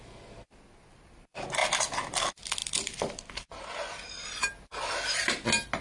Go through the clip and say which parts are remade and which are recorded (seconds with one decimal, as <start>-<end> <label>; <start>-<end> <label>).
0.0-2.6 recorded; 2.6-3.6 remade; 3.6-5.8 recorded